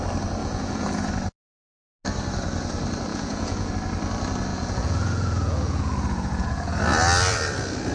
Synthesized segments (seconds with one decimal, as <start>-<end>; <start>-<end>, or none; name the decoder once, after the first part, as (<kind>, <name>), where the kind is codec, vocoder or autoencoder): 0.4-1.1 (vocoder, Vocos); 3.1-3.7; 4.5-6.8